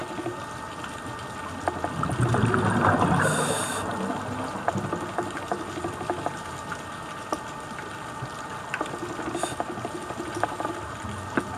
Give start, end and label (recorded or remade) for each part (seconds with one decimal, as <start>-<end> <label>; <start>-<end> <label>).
0.0-11.6 recorded